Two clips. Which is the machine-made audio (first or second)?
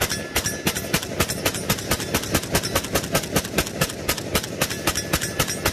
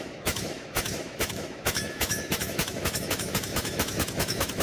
second